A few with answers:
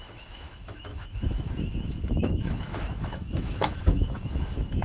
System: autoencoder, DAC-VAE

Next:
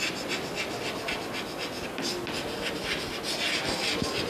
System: none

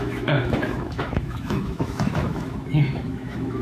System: autoencoder, DAC-VAE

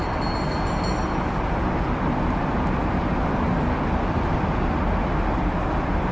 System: none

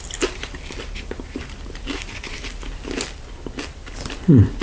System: none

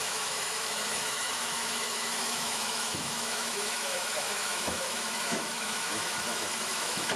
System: autoencoder, DAC-VAE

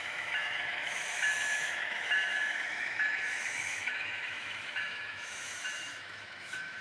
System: autoencoder, DAC-VAE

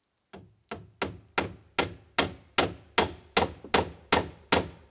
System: none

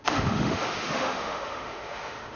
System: autoencoder, DAC-VAE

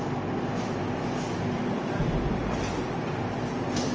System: none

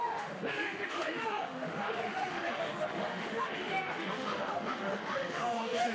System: autoencoder, DAC-VAE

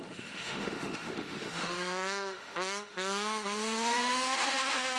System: autoencoder, DAC-VAE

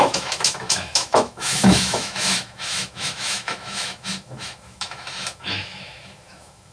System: autoencoder, DAC-VAE